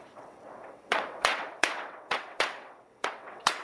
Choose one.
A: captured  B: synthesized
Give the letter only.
B